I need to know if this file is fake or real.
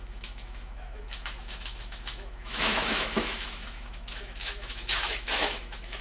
fake